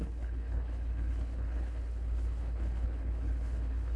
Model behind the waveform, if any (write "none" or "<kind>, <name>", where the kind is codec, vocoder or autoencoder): codec, HILCodec